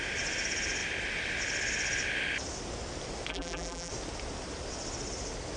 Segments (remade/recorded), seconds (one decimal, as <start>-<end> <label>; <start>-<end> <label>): 0.0-3.3 recorded; 3.3-3.9 remade; 3.9-5.6 recorded